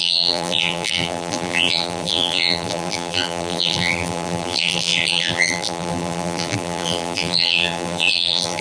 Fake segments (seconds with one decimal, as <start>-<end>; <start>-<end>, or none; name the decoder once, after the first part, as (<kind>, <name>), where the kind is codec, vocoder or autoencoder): 0.0-8.6 (vocoder, BigVGAN v2)